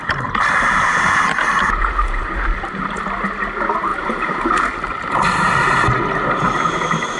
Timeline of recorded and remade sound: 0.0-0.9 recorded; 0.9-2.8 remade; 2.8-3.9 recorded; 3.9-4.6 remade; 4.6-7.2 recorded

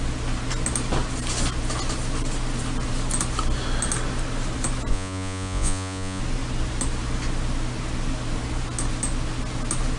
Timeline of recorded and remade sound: 0.0-4.9 recorded; 4.9-6.2 remade; 6.2-10.0 recorded

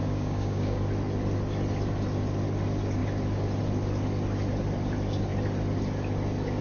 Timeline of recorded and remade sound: 0.0-0.8 remade; 0.8-6.6 recorded

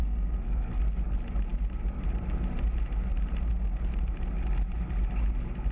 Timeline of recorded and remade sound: 0.0-0.8 remade; 0.8-5.7 recorded

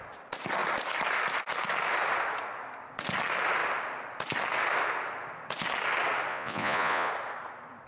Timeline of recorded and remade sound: 0.0-6.3 recorded; 6.3-7.1 remade; 7.1-7.9 recorded